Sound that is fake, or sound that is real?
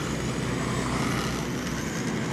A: real